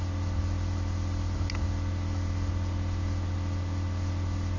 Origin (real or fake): real